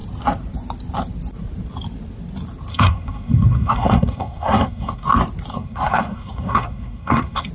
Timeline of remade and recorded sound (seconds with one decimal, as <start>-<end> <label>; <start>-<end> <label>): 0.0-2.7 recorded; 2.7-5.1 remade; 5.1-5.5 recorded; 5.5-7.5 remade